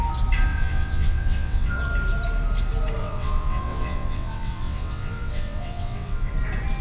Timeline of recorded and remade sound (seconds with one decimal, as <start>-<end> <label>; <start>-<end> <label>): 0.0-0.5 recorded; 0.5-1.8 remade; 1.8-3.0 recorded; 3.0-6.3 remade; 6.3-6.8 recorded